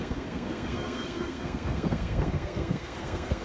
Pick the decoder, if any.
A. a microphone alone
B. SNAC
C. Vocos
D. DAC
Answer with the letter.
B